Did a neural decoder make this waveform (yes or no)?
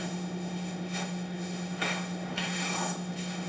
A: yes